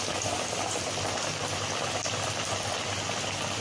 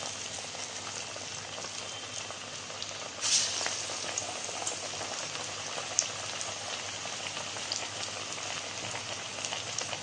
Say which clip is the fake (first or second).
first